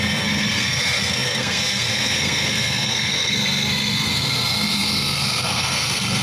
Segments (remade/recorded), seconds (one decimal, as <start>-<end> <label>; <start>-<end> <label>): 0.0-6.2 remade

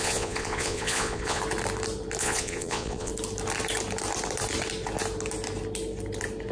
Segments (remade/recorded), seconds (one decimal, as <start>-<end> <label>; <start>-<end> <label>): 0.0-1.4 remade; 1.4-2.2 recorded; 2.2-3.1 remade; 3.1-6.5 recorded

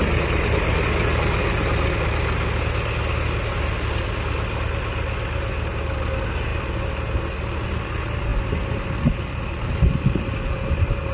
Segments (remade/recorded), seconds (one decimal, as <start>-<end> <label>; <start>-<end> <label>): 0.0-11.1 recorded

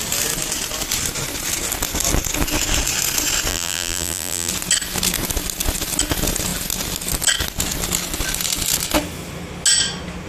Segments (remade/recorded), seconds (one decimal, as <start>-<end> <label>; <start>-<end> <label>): 0.0-3.5 recorded; 3.5-4.5 remade; 4.5-10.3 recorded

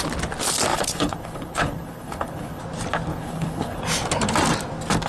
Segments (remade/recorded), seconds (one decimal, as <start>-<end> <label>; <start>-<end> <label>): 0.0-0.7 recorded; 0.7-2.6 remade; 2.6-3.1 recorded; 3.1-3.8 remade; 3.8-5.1 recorded

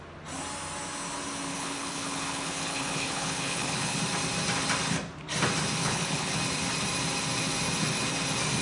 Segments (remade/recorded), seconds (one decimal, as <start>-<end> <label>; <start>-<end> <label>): 0.0-1.5 recorded; 1.5-4.0 remade; 4.0-5.8 recorded; 5.8-6.4 remade; 6.4-8.6 recorded